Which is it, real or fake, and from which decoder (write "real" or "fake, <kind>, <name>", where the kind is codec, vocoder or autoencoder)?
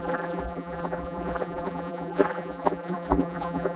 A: fake, vocoder, BigVGAN v2